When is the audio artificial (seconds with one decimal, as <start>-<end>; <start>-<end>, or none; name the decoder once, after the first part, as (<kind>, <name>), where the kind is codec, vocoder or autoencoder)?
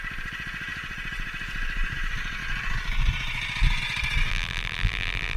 4.3-5.4 (vocoder, BigVGAN v2)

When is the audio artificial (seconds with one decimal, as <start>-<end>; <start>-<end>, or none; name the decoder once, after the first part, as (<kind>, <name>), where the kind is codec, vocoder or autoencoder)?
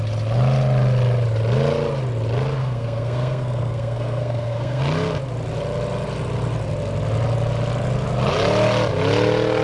2.6-4.8 (codec, SNAC)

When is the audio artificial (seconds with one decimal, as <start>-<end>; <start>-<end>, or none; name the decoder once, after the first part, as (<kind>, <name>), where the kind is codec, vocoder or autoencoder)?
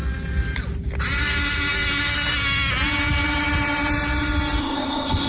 4.6-5.3 (codec, ZipCodec)